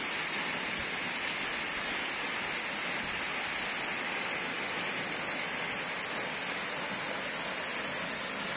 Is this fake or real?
real